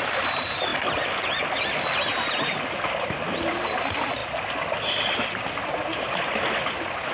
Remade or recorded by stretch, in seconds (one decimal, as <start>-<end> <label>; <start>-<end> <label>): 0.0-7.1 recorded